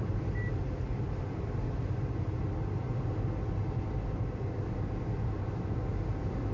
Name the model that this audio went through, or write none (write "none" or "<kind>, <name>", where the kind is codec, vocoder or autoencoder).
none